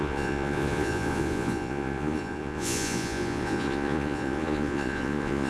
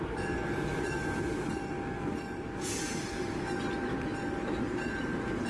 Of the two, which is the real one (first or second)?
second